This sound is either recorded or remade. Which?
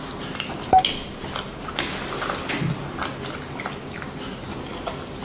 recorded